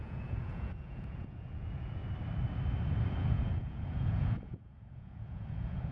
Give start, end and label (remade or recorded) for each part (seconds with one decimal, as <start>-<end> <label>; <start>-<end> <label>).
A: 0.0-2.0 remade; 2.0-3.2 recorded; 3.2-5.9 remade